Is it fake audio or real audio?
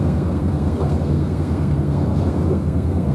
fake